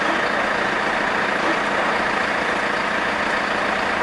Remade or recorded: recorded